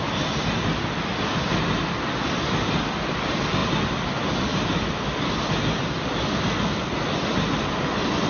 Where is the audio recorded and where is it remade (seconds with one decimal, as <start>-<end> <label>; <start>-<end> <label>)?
0.0-8.3 recorded